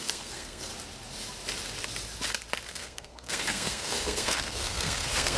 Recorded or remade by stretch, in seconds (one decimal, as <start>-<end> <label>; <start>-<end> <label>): 0.0-0.7 remade; 0.7-2.7 recorded; 2.7-5.4 remade